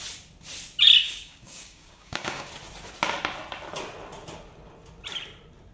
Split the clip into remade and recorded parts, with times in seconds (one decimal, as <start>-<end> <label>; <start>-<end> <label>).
0.0-1.0 recorded; 1.0-2.5 remade; 2.5-5.7 recorded